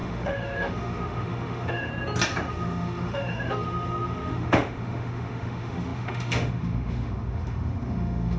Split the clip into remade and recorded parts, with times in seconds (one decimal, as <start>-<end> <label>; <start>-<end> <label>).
0.0-1.9 remade; 1.9-2.5 recorded; 2.5-8.4 remade